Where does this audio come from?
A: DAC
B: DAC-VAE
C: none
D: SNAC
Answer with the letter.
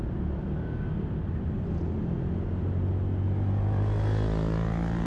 C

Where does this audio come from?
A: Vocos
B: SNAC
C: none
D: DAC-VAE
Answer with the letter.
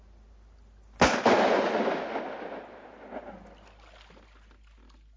C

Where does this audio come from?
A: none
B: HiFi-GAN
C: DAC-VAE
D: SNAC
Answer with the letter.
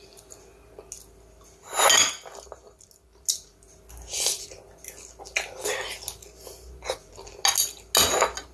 A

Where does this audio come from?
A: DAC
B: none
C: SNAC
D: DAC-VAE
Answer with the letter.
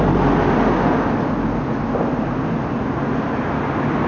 B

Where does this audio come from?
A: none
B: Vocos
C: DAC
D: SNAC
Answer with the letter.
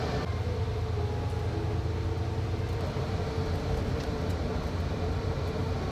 A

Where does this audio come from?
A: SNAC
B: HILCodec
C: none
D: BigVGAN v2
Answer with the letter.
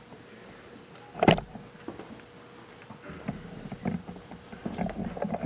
C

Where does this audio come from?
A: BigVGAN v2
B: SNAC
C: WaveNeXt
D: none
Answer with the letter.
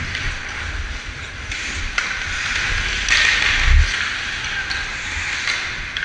D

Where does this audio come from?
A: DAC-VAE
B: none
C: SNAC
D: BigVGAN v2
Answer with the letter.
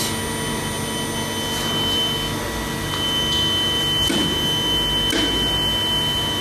B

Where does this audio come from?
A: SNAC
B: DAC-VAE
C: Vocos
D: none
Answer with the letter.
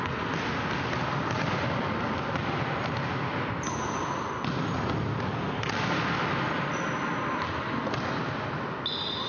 D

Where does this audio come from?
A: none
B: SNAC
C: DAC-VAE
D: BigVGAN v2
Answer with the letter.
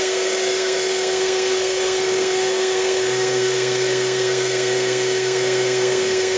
B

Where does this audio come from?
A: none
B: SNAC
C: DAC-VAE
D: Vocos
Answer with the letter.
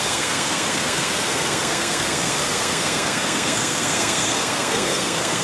B